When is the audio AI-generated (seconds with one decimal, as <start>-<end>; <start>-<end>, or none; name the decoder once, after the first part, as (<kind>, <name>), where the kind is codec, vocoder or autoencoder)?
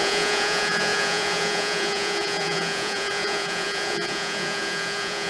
0.0-5.3 (vocoder, Vocos)